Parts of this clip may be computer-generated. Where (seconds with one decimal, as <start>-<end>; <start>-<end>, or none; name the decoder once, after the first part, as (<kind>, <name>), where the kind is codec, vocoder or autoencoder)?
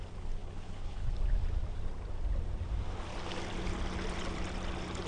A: 0.4-1.1 (codec, HILCodec)